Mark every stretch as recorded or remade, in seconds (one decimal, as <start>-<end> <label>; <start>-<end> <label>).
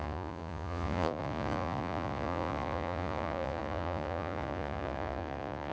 0.0-5.7 remade